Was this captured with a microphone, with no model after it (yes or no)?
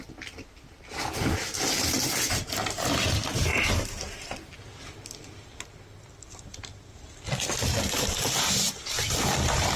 yes